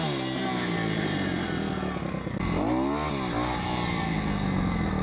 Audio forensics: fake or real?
real